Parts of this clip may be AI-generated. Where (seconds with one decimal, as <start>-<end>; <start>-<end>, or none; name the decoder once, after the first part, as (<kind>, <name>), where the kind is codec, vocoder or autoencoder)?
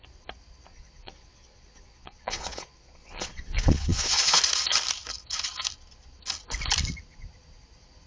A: 0.7-4.4 (vocoder, Vocos)